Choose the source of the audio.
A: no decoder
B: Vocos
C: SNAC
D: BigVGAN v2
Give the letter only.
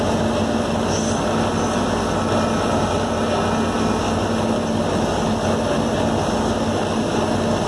A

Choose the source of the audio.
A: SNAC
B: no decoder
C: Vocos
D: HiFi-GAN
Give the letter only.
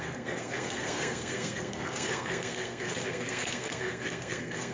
A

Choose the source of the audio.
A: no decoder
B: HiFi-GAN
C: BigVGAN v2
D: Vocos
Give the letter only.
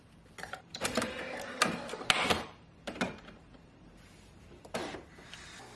C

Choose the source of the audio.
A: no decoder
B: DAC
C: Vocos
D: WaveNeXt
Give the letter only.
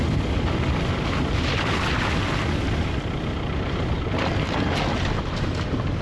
A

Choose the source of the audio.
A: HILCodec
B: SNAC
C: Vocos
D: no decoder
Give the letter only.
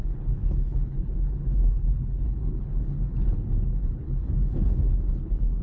A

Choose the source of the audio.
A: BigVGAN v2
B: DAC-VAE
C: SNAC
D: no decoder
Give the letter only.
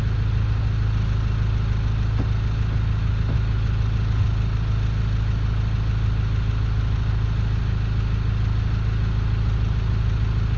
D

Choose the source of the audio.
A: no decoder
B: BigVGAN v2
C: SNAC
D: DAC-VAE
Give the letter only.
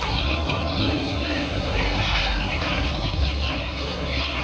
C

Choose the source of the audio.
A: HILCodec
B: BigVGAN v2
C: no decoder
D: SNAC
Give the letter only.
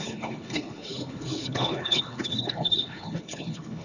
A